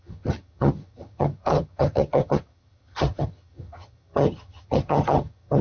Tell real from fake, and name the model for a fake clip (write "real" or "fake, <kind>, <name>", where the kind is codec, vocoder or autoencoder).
fake, vocoder, HiFi-GAN